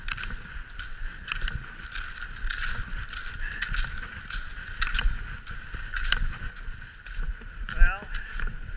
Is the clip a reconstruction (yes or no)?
no